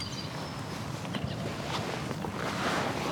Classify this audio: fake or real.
real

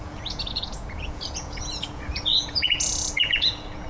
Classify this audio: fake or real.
fake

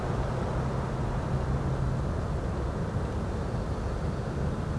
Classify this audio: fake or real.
real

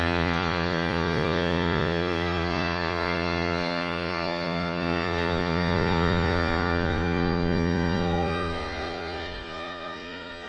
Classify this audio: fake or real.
fake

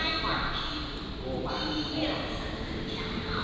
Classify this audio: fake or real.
real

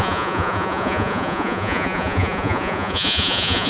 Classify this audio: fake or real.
fake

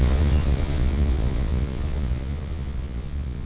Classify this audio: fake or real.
fake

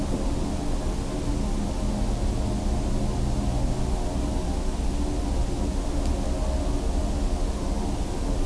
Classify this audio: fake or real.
real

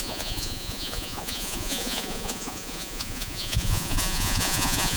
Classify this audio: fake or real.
fake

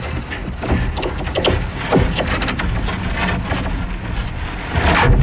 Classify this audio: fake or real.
real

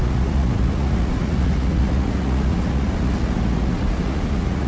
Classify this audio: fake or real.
fake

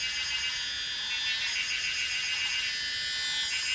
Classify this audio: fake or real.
real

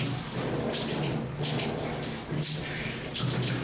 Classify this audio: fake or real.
real